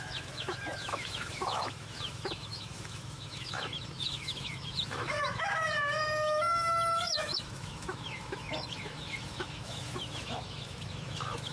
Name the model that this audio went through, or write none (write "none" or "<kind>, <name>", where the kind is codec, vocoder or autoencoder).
autoencoder, DAC-VAE